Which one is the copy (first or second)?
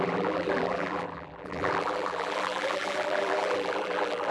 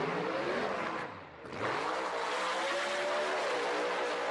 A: first